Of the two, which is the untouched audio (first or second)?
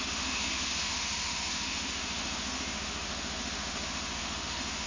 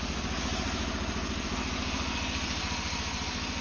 second